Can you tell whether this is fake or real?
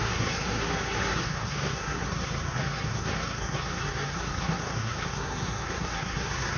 fake